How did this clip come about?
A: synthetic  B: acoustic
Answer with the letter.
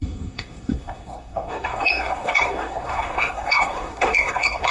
A